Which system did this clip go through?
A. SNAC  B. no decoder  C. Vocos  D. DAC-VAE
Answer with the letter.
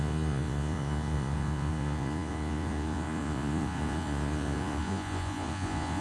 C